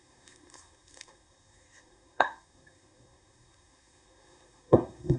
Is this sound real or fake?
fake